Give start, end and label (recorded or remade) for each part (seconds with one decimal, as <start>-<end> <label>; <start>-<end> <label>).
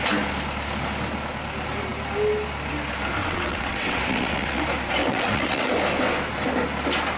0.0-3.2 recorded; 3.2-4.6 remade; 4.6-5.0 recorded; 5.0-5.7 remade; 5.7-7.2 recorded